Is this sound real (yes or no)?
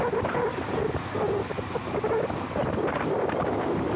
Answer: yes